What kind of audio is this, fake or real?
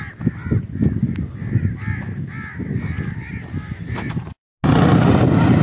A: real